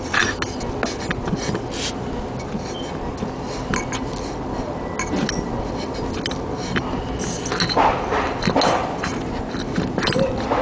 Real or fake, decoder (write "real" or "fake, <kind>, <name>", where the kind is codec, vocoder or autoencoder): real